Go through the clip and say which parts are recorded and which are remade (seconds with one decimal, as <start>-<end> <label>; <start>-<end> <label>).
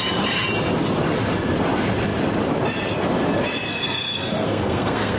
0.0-3.7 recorded; 3.7-5.2 remade